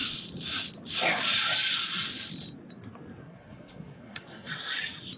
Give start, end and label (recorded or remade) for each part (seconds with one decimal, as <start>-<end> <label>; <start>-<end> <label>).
0.0-3.2 recorded; 3.2-4.5 remade; 4.5-5.2 recorded